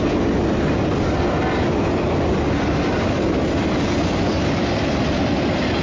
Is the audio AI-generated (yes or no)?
no